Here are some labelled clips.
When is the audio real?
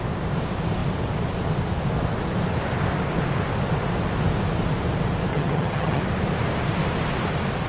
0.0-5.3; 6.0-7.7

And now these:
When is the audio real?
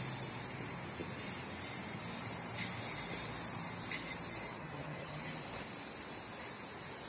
0.0-4.5; 5.2-7.1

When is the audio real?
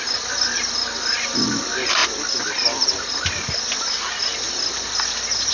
0.0-5.5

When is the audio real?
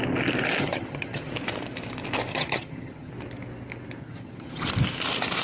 0.0-0.6; 1.3-2.3; 3.1-4.0; 4.7-5.4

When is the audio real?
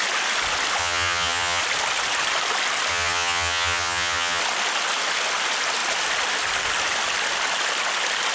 0.0-0.8; 1.6-2.9; 4.4-8.3